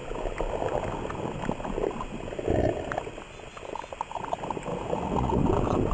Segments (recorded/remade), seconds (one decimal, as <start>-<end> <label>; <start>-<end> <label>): 0.0-4.7 recorded; 4.7-5.4 remade; 5.4-5.9 recorded